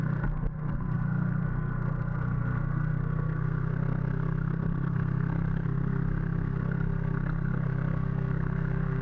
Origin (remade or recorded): remade